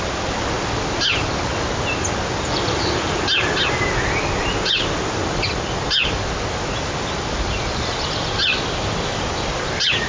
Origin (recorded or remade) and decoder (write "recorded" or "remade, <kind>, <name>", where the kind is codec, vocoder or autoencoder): recorded